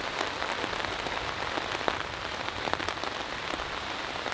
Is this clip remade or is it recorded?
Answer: recorded